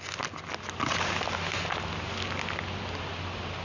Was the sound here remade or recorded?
recorded